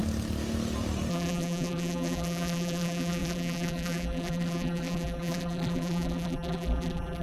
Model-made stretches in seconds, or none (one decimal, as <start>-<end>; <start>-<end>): 1.1-7.2